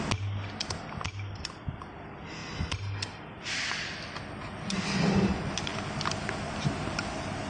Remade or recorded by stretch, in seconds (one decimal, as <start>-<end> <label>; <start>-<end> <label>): 0.0-7.5 recorded